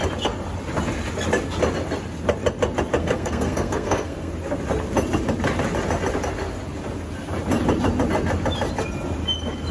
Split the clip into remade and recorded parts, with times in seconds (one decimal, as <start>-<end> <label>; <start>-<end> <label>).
0.0-3.0 recorded; 3.0-4.3 remade; 4.3-9.7 recorded